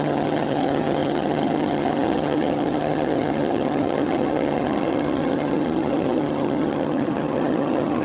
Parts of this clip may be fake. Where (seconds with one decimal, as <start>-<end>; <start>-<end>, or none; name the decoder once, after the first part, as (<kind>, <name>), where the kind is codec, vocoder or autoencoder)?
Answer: 0.0-8.0 (vocoder, HiFi-GAN)